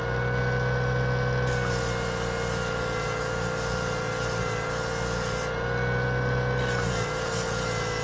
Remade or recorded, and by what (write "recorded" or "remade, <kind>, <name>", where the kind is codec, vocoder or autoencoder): recorded